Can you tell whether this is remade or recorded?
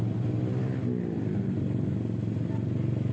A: recorded